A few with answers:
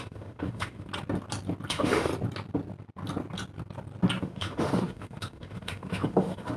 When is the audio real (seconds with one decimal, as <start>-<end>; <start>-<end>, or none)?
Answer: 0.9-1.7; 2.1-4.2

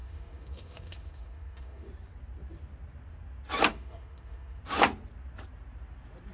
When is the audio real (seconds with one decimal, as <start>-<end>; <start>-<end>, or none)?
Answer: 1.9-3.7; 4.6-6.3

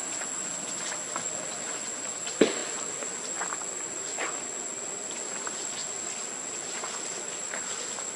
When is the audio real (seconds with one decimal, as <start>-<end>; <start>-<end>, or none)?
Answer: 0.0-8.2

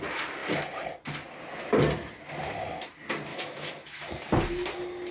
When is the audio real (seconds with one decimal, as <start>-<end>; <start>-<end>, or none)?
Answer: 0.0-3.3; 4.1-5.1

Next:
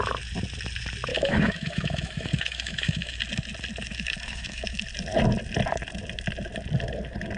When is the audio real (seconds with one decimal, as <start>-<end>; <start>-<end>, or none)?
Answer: 0.0-1.1; 3.2-3.9; 4.8-7.4

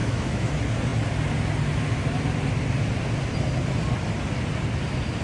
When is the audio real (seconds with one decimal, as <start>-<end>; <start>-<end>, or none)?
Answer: 0.5-5.2

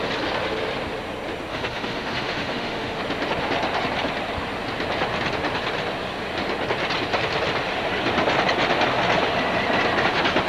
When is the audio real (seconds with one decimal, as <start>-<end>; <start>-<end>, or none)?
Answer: 0.0-1.5; 3.0-10.5